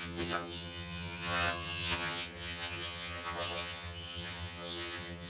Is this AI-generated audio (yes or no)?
yes